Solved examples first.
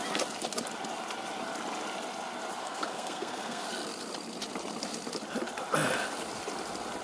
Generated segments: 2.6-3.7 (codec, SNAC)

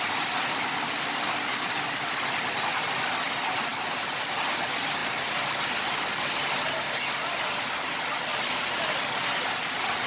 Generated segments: none

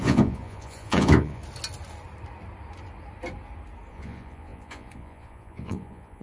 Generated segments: 0.0-1.4 (vocoder, Vocos); 3.9-6.2

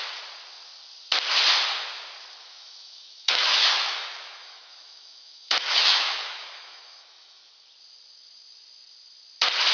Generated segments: 2.4-7.5 (autoencoder, DAC-VAE)

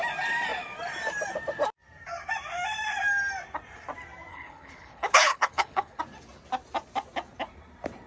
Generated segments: 4.3-6.0 (codec, HILCodec)

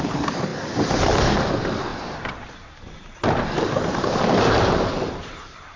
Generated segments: 0.0-0.5 (vocoder, BigVGAN v2); 1.2-5.8